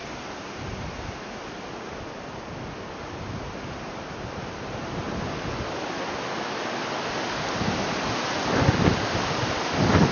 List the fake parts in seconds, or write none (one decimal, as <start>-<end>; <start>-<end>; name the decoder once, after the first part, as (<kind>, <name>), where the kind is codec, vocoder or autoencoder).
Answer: none